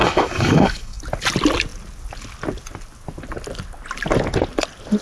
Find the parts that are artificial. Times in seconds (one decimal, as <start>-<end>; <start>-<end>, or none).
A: 0.0-1.0